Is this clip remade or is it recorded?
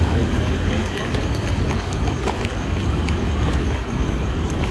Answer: remade